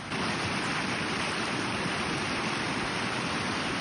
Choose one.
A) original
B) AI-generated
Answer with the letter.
A